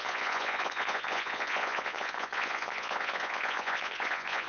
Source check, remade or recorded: remade